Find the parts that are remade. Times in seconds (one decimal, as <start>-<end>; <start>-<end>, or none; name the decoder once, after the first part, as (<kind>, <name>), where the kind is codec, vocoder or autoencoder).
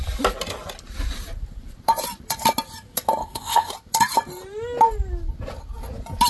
3.2-3.7 (codec, SNAC)